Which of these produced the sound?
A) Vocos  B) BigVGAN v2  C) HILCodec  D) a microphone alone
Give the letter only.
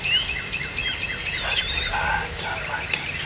D